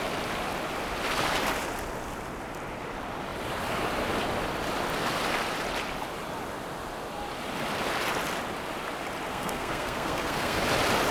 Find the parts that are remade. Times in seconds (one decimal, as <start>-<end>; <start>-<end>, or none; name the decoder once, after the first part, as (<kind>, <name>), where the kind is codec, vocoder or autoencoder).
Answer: 9.3-10.6 (codec, SNAC)